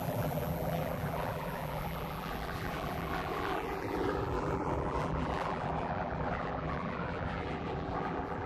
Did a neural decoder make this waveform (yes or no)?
yes